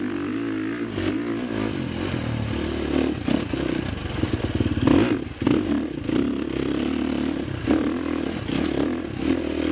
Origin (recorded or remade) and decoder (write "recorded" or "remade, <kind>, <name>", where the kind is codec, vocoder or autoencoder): recorded